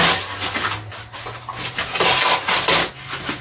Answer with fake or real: real